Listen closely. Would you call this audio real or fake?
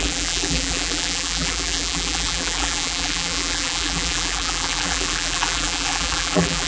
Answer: fake